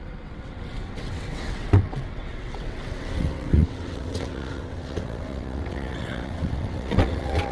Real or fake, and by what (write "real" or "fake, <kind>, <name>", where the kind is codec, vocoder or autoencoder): fake, vocoder, WaveNeXt